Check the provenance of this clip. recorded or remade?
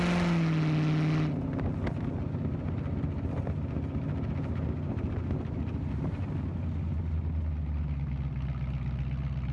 recorded